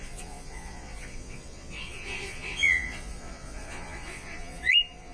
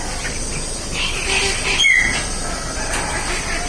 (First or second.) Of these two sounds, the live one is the second